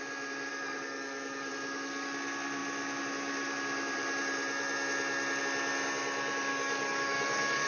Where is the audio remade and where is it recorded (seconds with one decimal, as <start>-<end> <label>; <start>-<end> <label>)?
0.0-0.5 recorded; 0.5-1.5 remade; 1.5-6.5 recorded; 6.5-7.7 remade